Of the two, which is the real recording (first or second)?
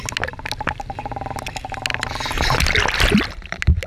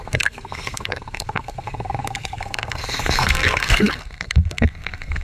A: first